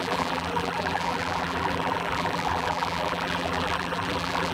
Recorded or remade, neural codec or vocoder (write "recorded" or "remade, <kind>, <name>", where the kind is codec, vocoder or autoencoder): remade, vocoder, BigVGAN v2